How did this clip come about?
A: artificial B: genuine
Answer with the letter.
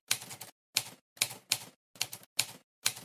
B